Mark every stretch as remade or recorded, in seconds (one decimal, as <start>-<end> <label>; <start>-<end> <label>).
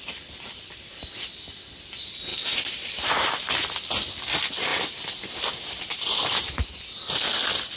0.0-2.3 recorded; 2.3-3.3 remade; 3.3-4.7 recorded; 4.7-6.7 remade; 6.7-7.8 recorded